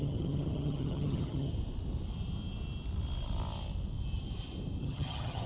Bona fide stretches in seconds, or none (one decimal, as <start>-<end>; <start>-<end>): 1.5-4.8